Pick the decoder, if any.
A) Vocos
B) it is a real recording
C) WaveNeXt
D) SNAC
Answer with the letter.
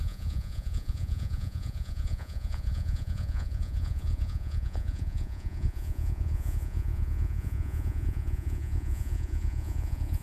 A